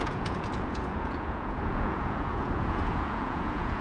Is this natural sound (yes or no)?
no